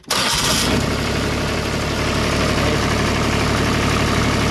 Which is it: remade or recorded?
recorded